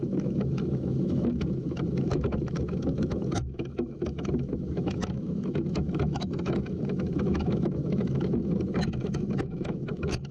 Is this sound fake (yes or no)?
yes